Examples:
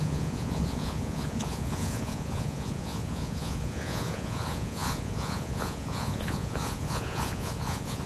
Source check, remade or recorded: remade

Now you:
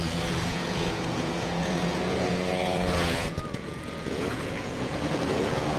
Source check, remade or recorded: remade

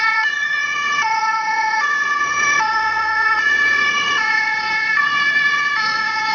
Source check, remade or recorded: remade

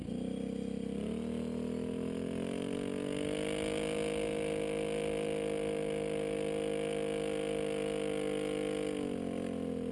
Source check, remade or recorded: recorded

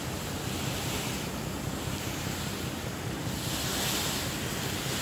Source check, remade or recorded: recorded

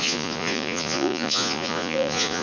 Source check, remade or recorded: remade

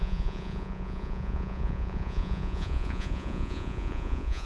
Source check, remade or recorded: remade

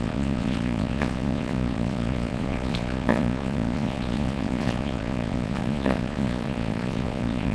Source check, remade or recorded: remade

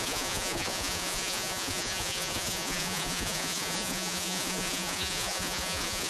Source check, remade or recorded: remade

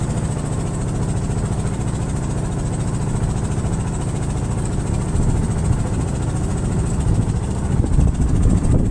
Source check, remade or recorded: recorded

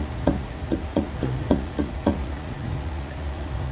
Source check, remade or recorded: remade